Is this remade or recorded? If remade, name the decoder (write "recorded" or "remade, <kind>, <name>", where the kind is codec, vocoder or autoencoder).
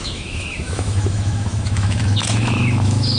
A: remade, autoencoder, DAC-VAE